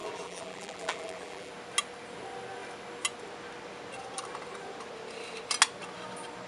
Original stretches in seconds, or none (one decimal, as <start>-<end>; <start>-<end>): 1.5-6.5